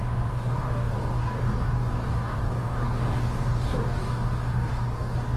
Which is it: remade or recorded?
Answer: remade